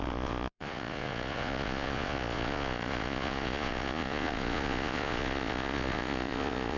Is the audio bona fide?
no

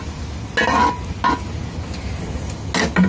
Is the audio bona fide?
yes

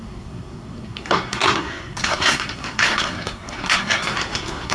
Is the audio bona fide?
no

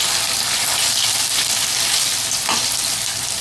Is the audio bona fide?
yes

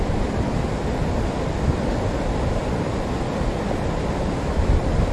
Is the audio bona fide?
yes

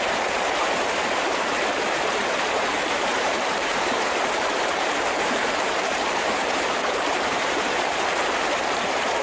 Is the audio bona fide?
no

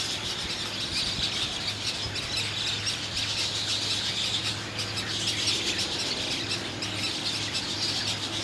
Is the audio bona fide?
yes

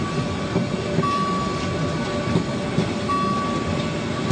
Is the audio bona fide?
yes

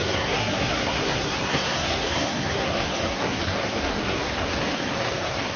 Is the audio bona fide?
no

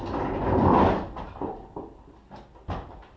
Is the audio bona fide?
yes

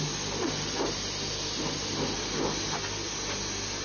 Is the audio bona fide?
yes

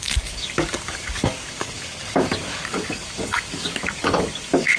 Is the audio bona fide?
no